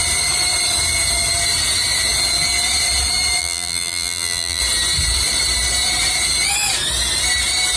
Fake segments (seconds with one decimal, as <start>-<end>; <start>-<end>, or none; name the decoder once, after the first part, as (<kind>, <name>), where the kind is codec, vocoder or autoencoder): 3.4-4.6 (vocoder, BigVGAN v2)